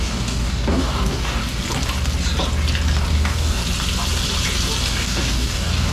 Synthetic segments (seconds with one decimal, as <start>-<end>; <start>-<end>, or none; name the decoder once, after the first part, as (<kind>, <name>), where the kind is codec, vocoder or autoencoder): 0.0-1.4 (codec, DAC); 3.1-3.6; 4.9-5.9